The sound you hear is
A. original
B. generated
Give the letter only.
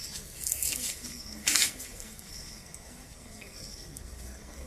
B